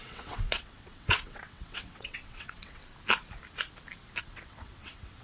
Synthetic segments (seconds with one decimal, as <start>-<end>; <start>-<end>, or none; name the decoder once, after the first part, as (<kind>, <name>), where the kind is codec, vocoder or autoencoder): 0.0-2.8 (vocoder, WaveNeXt); 4.2-5.2